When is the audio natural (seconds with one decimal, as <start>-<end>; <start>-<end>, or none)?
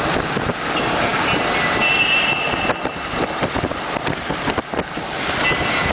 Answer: 0.0-5.9